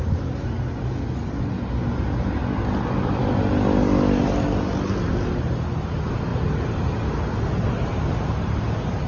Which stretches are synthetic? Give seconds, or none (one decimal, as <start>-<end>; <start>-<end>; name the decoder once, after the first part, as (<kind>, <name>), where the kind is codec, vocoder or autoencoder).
6.3-7.1 (vocoder, BigVGAN v2); 7.9-8.7